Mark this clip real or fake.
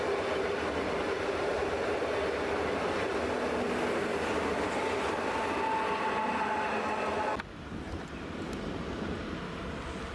real